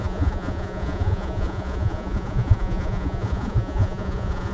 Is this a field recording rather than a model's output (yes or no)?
no